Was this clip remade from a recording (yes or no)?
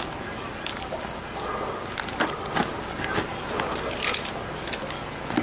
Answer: no